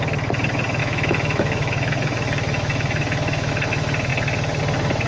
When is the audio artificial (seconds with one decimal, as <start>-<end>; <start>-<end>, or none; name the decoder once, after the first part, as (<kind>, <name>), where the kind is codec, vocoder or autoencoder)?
0.8-3.5 (autoencoder, DAC-VAE)